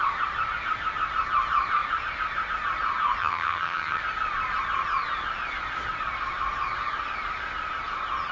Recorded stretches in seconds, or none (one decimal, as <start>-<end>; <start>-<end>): 0.0-3.2; 4.0-8.3